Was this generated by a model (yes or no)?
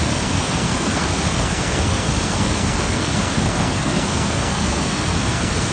yes